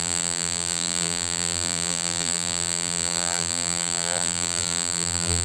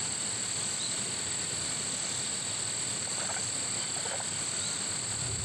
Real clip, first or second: second